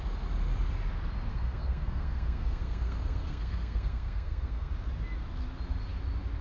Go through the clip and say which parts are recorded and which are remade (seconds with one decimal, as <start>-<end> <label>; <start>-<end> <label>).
0.0-1.3 recorded; 1.3-4.7 remade; 4.7-6.4 recorded